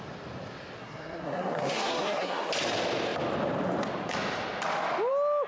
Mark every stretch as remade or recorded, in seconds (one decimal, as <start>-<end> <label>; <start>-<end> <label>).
0.0-0.8 recorded; 0.8-2.5 remade; 2.5-5.5 recorded